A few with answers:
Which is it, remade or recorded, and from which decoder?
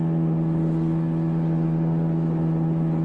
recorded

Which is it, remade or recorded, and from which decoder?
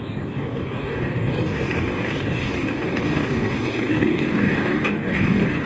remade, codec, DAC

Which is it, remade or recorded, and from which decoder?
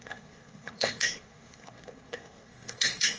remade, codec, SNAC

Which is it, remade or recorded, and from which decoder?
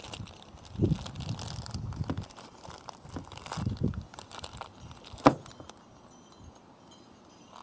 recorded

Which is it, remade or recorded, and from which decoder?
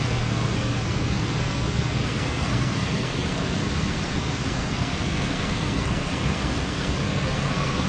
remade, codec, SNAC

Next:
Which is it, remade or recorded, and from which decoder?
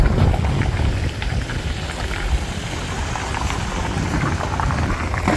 recorded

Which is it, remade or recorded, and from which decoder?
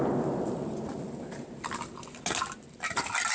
recorded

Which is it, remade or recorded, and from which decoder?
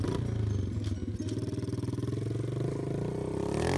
recorded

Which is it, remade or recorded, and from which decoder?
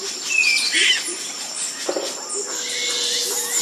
recorded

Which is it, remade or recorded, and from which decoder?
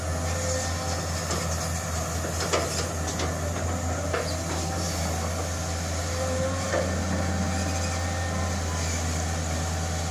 recorded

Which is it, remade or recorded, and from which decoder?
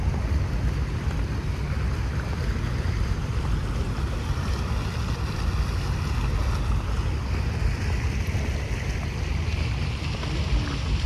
recorded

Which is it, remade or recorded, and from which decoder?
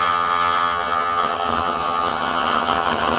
remade, vocoder, HiFi-GAN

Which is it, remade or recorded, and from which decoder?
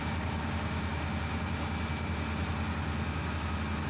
recorded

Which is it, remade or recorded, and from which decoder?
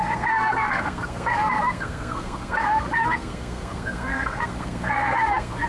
remade, codec, SNAC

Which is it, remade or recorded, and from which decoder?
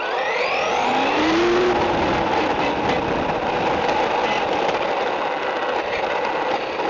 recorded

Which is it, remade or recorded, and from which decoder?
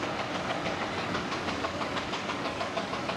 remade, codec, DAC